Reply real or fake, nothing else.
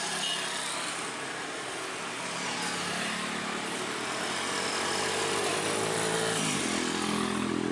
real